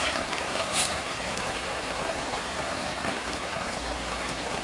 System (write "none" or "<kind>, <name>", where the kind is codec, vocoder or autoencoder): codec, SNAC